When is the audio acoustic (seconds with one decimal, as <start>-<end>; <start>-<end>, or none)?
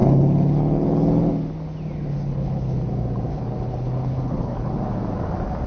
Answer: 1.3-2.1; 2.9-3.3; 4.7-5.7